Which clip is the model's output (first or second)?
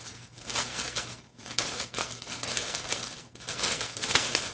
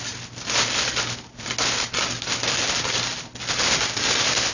first